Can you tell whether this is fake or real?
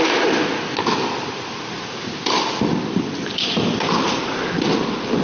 real